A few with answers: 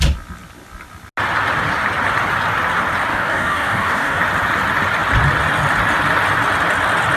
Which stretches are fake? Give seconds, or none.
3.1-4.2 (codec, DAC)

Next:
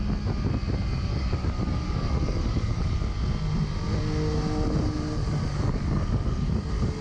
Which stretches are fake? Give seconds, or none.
1.1-3.0 (codec, DAC); 5.4-6.5

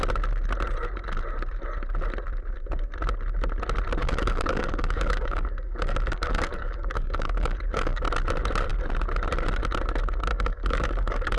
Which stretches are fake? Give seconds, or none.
4.0-8.0 (codec, DAC); 10.3-11.4

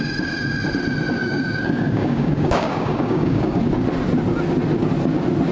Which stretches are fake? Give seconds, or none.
1.2-3.6 (codec, DAC)

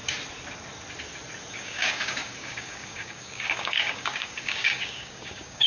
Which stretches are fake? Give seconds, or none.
1.5-5.7 (codec, DAC)

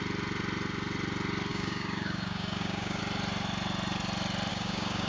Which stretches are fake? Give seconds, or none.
1.5-3.0 (codec, DAC); 4.5-5.1

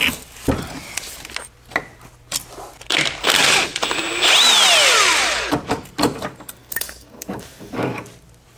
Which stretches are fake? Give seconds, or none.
6.6-8.0 (codec, DAC)